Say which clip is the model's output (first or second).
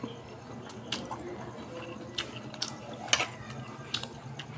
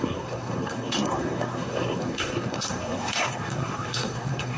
second